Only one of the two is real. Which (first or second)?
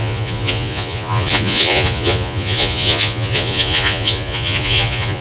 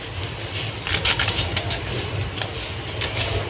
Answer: second